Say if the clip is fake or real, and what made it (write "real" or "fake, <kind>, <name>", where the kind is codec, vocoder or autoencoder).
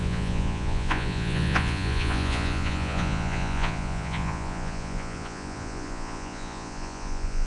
fake, vocoder, Vocos